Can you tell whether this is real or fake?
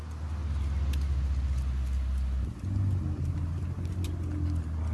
real